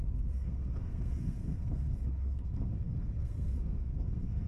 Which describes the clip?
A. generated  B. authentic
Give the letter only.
A